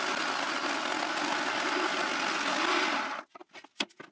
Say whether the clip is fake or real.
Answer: real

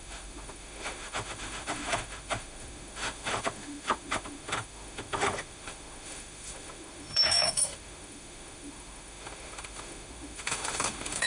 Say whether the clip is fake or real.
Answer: fake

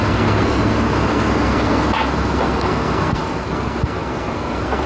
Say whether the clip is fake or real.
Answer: fake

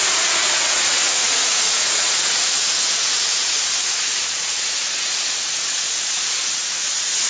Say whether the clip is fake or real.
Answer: fake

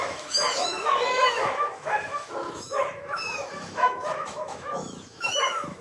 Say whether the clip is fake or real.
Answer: fake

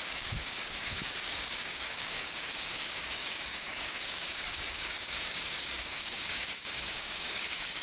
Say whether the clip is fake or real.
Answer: fake